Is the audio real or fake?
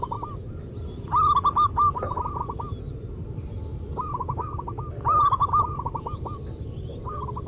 real